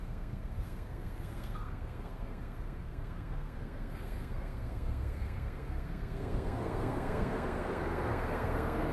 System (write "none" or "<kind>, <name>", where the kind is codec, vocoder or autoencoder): codec, SNAC